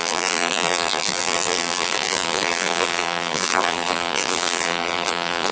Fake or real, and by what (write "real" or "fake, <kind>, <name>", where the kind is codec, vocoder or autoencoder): fake, vocoder, BigVGAN v2